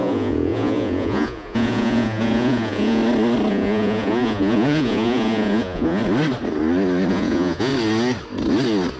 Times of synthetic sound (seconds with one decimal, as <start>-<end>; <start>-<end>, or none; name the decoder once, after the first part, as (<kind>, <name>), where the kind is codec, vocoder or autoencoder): 0.0-3.0 (vocoder, Vocos); 3.5-6.0; 7.1-7.7